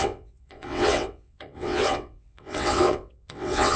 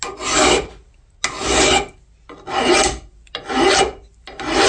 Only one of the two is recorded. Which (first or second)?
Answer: second